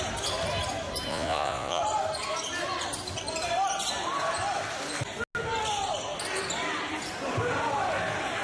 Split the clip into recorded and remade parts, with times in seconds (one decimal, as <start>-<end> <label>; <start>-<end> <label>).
0.0-1.1 recorded; 1.1-1.8 remade; 1.8-8.4 recorded